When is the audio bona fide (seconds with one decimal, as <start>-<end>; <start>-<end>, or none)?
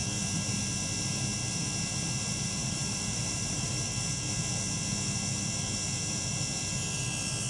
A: 0.0-2.6; 3.7-7.5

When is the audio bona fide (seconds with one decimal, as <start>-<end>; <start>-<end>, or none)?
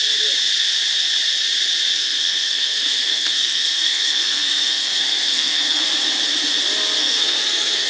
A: 0.0-1.9; 5.8-7.0